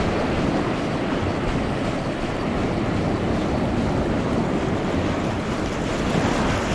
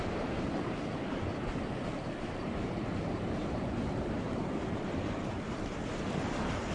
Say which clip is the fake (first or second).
second